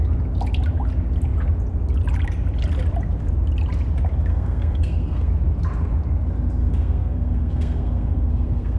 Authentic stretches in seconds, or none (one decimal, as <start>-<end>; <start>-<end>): 0.0-4.3; 5.3-6.6